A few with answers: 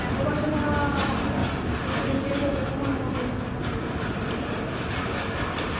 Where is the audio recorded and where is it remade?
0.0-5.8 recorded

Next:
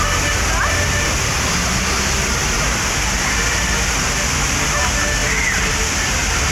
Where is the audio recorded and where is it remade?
0.0-6.5 recorded